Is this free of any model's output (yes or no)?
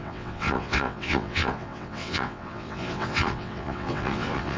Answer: no